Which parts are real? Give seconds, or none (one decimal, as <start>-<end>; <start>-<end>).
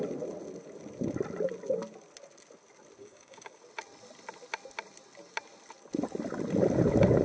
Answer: 0.0-3.0; 3.6-7.2